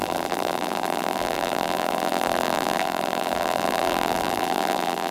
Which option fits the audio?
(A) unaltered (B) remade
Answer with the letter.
B